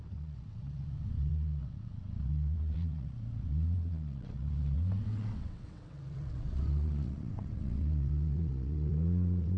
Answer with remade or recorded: remade